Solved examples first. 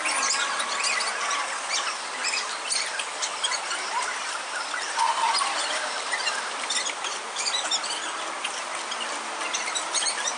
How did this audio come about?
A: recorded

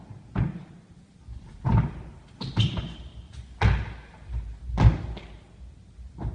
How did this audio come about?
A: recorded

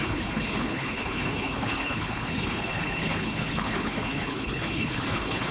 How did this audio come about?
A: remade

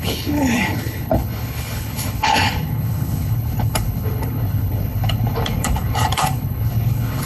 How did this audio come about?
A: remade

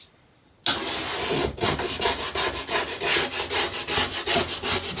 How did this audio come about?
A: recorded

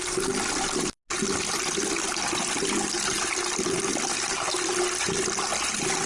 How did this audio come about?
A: recorded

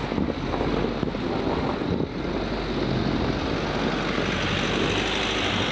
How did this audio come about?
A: recorded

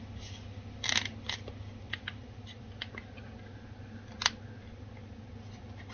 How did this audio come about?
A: recorded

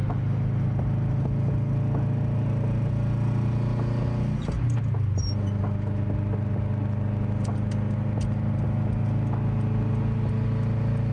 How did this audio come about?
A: recorded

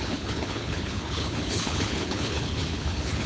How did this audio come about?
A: remade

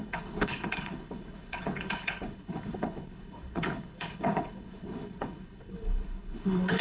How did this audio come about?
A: remade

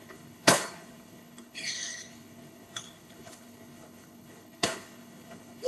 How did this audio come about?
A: remade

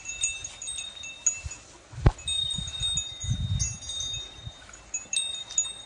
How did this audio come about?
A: recorded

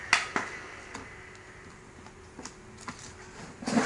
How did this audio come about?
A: recorded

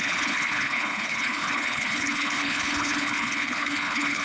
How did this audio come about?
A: remade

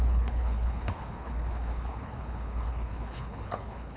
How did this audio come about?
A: remade